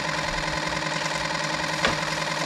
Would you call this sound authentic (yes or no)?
yes